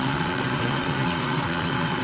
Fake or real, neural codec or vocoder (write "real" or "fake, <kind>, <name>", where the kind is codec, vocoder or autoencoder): fake, vocoder, WaveNeXt